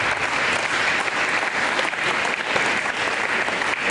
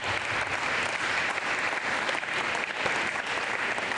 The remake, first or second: second